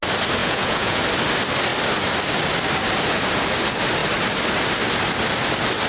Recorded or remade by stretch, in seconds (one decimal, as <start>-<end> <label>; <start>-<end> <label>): 0.0-0.4 recorded; 0.4-1.0 remade; 1.0-5.9 recorded